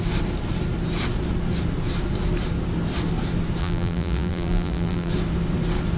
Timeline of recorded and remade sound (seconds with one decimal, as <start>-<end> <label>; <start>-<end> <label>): 0.0-3.6 recorded; 3.6-5.1 remade; 5.1-6.0 recorded